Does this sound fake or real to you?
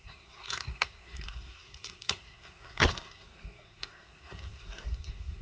fake